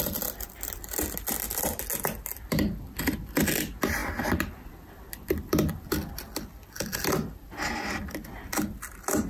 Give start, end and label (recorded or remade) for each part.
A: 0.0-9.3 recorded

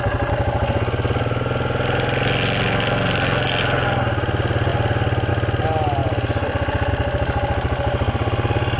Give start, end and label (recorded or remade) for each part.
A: 0.0-8.8 recorded

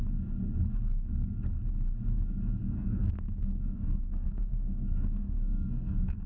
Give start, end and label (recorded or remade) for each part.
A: 0.0-2.6 recorded; 2.6-6.3 remade

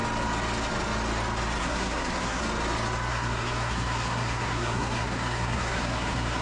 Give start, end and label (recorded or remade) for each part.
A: 0.0-1.6 recorded; 1.6-2.4 remade; 2.4-3.1 recorded; 3.1-6.4 remade

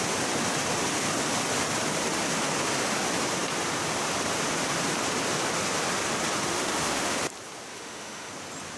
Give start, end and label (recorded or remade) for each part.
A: 0.0-6.5 recorded; 6.5-7.2 remade; 7.2-7.7 recorded; 7.7-8.3 remade; 8.3-8.8 recorded